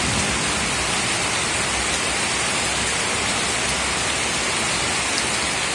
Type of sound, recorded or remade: recorded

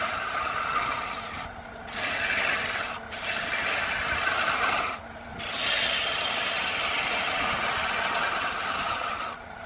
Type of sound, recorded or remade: recorded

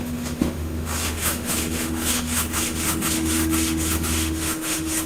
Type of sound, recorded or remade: remade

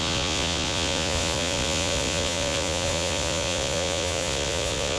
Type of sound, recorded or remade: remade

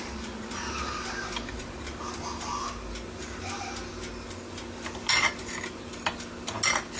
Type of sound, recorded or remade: recorded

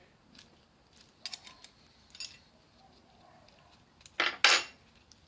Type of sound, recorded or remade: recorded